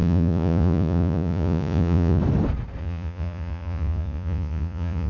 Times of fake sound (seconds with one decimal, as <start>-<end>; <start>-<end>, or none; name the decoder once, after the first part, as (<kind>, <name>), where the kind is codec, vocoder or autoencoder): 0.0-2.2 (vocoder, Vocos); 2.8-5.1